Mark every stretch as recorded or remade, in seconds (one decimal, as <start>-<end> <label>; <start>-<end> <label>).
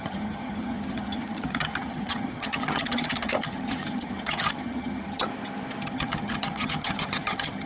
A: 0.0-5.3 remade; 5.3-5.8 recorded; 5.8-7.7 remade